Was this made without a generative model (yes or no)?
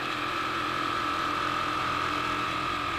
no